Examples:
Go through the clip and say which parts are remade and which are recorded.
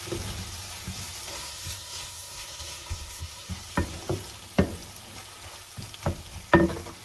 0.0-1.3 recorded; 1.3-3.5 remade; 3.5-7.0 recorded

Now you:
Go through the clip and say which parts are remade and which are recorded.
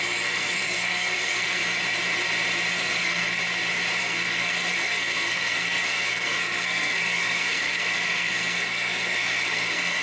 0.0-1.6 remade; 1.6-2.7 recorded; 2.7-3.4 remade; 3.4-4.0 recorded; 4.0-10.0 remade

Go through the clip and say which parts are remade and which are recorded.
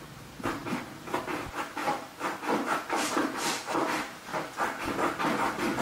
0.0-0.6 remade; 0.6-1.2 recorded; 1.2-4.3 remade; 4.3-5.8 recorded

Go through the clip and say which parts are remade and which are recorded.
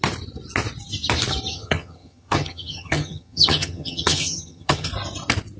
0.0-1.5 recorded; 1.5-4.9 remade; 4.9-5.6 recorded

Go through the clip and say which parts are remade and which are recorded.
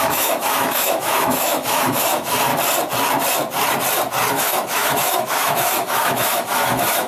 0.0-2.5 remade; 2.5-4.3 recorded; 4.3-7.1 remade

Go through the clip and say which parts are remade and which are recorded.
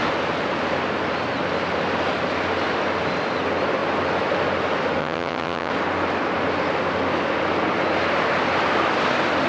0.0-5.0 recorded; 5.0-5.7 remade; 5.7-9.5 recorded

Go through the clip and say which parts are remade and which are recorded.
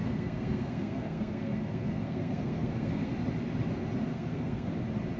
0.0-3.1 remade; 3.1-4.1 recorded; 4.1-4.7 remade; 4.7-5.2 recorded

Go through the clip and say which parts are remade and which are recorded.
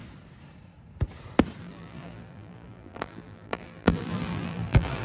0.0-1.6 recorded; 1.6-5.0 remade